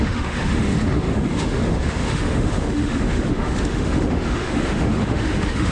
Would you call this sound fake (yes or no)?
yes